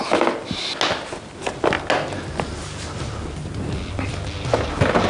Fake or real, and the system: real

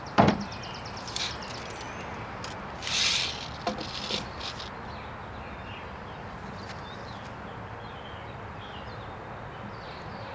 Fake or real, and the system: real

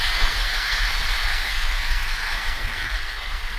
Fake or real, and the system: fake, codec, SNAC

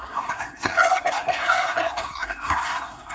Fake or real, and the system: fake, codec, SNAC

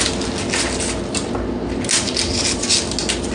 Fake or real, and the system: real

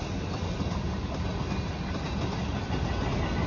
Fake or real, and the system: real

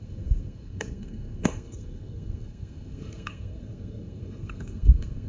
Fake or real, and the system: fake, codec, SNAC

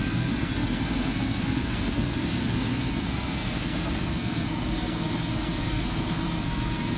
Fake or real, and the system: fake, codec, SNAC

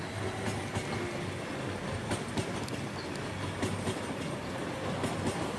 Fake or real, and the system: real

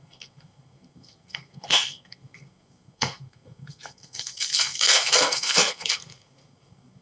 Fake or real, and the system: fake, codec, SNAC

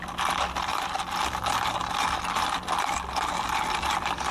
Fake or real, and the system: real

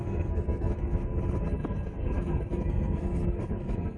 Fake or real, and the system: fake, codec, SNAC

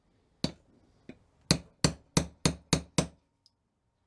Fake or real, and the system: real